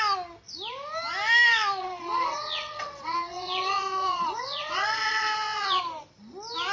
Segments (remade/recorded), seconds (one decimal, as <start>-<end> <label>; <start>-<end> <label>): 0.0-1.8 recorded; 1.8-5.8 remade; 5.8-6.7 recorded